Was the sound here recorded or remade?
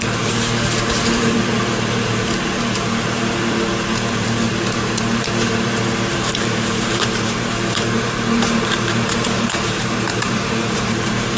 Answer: remade